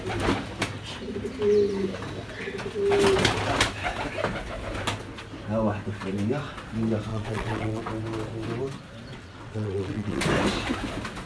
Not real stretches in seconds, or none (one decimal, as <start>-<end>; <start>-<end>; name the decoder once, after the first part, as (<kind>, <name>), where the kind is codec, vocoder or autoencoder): 7.1-7.8 (vocoder, WaveNeXt); 9.1-10.2